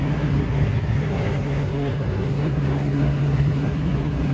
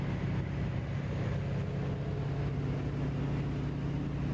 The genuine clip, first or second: second